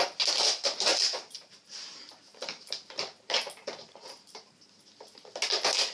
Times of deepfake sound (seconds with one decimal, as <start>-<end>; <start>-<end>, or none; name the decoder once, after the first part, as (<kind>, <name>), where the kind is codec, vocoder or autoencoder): 0.9-4.4 (vocoder, BigVGAN v2)